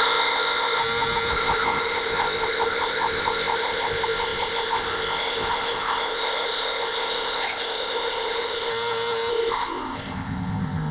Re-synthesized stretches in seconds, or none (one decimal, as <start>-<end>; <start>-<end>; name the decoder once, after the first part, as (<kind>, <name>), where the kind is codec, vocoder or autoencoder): 0.0-0.8 (codec, ZipCodec); 1.3-8.7; 9.3-10.9

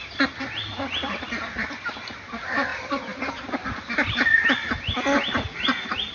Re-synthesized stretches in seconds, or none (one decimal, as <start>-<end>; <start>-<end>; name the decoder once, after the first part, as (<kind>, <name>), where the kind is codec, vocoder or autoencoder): none